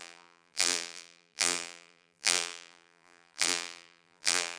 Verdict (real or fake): fake